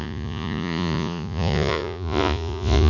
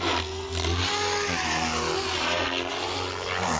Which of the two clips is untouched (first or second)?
second